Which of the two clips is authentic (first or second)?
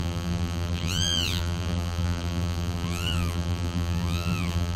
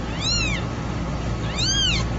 second